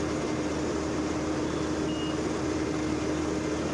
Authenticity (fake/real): real